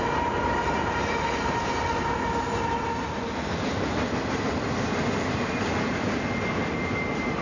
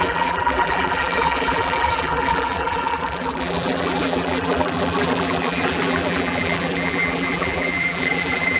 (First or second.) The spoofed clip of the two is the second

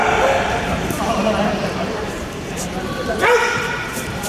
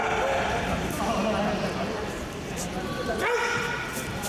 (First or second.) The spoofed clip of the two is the first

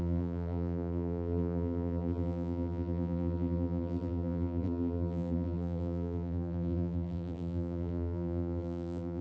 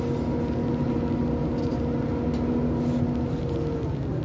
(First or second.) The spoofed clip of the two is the first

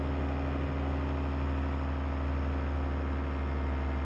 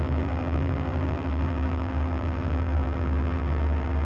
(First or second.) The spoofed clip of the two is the second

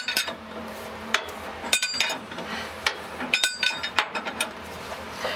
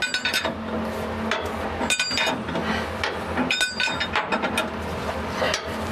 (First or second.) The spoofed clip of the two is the first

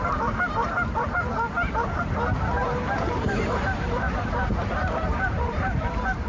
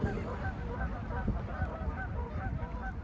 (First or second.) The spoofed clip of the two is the first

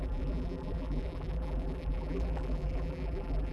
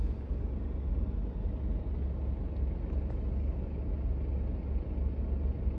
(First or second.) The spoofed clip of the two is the first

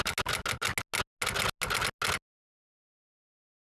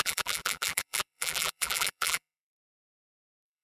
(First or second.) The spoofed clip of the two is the second